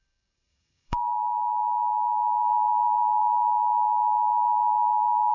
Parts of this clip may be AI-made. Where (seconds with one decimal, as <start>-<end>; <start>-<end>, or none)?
0.0-5.3